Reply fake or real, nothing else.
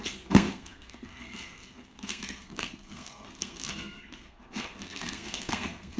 fake